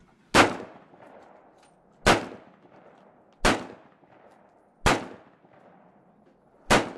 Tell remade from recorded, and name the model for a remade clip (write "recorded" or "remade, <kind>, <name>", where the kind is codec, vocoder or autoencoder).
recorded